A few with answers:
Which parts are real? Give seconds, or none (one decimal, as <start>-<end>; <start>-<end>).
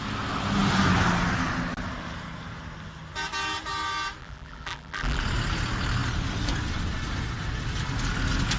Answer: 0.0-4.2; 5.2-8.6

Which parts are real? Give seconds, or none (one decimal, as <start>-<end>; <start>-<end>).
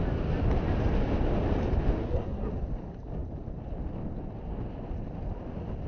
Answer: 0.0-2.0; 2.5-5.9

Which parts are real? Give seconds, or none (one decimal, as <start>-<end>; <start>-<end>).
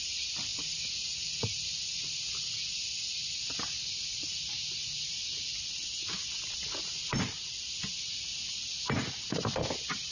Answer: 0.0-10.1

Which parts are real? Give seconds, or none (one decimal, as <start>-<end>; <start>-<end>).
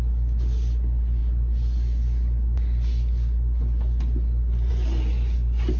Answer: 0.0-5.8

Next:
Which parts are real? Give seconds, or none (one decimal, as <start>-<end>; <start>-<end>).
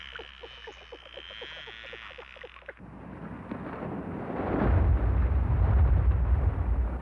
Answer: 0.0-7.0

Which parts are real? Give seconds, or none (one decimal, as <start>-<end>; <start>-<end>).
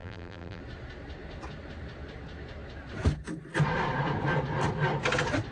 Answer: 0.6-5.5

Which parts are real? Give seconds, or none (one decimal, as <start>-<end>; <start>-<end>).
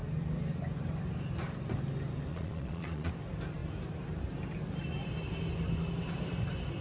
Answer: 0.0-2.3; 3.1-6.8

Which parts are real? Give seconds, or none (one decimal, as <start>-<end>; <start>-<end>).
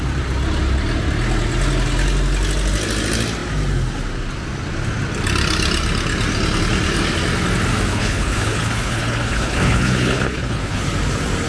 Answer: 0.0-7.9; 10.8-11.5